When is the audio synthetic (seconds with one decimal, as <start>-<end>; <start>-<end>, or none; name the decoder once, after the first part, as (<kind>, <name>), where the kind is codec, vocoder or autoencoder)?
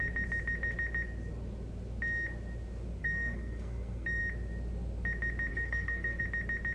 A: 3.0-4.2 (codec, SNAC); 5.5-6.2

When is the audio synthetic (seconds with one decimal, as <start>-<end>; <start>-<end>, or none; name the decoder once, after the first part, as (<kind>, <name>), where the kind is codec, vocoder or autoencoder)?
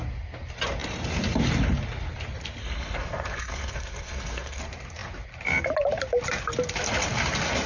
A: 2.6-4.6 (codec, SNAC)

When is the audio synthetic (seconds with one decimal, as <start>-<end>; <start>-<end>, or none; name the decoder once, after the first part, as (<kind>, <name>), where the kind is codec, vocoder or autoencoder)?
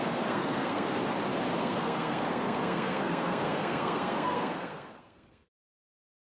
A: 0.0-1.0 (codec, SNAC); 1.6-6.2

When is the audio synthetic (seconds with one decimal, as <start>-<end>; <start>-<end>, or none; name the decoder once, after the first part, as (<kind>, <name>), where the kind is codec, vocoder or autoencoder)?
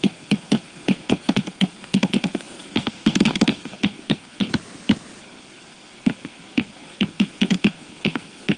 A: 0.0-4.5 (codec, SNAC); 5.2-8.6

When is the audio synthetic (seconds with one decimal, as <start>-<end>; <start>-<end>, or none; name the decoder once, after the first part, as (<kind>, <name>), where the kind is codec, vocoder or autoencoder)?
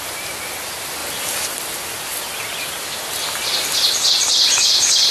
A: none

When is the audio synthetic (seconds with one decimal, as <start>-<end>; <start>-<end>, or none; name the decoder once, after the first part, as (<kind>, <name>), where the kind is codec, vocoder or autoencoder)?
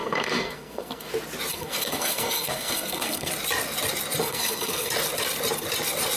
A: 0.0-1.1 (codec, SNAC); 1.5-3.3; 4.2-4.9